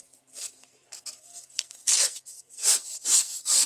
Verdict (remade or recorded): remade